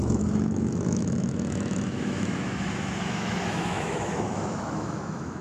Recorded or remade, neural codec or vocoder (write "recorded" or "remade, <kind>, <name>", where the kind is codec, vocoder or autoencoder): remade, autoencoder, DAC-VAE